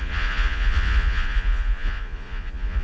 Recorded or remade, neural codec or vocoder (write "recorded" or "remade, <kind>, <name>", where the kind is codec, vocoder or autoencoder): remade, vocoder, Vocos